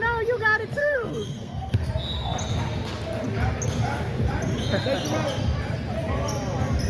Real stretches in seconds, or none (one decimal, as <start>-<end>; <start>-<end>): 0.0-0.8; 1.9-6.9